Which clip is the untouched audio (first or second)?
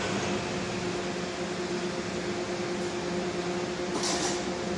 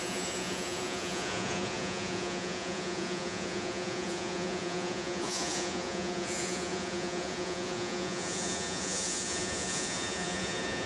first